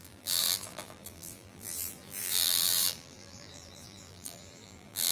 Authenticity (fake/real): fake